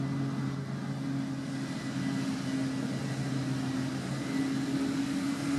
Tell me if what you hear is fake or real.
real